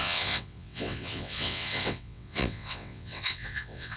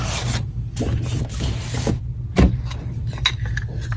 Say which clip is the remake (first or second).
first